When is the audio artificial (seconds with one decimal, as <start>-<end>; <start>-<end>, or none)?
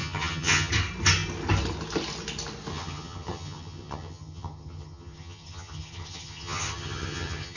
0.0-0.7; 2.7-7.6